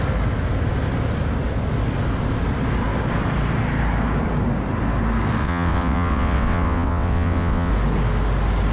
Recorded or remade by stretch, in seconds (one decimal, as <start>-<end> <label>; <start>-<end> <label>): 0.0-5.4 recorded; 5.4-7.7 remade; 7.7-8.7 recorded